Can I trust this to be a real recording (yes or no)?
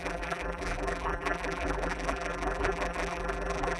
no